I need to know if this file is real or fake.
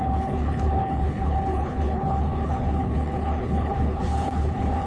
fake